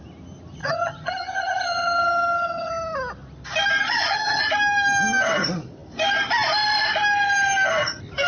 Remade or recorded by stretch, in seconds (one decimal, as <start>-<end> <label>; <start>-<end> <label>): 0.0-0.6 recorded; 0.6-2.7 remade; 2.7-3.8 recorded; 3.8-4.4 remade; 4.4-8.3 recorded

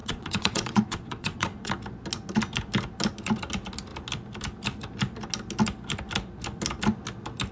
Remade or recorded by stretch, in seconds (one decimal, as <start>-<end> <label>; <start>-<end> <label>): 0.0-1.7 remade; 1.7-7.5 recorded

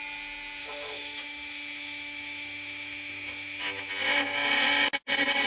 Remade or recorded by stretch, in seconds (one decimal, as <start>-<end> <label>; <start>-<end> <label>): 0.0-0.6 recorded; 0.6-3.9 remade; 3.9-5.5 recorded

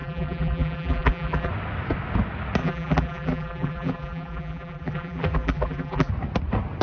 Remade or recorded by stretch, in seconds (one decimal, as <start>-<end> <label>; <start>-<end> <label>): 0.0-1.5 remade; 1.5-2.6 recorded; 2.6-6.1 remade; 6.1-6.8 recorded

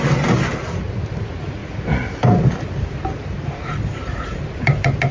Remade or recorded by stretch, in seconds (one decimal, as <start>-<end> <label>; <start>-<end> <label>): 0.0-5.1 recorded